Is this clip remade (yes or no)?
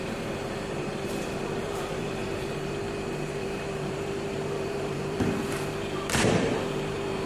yes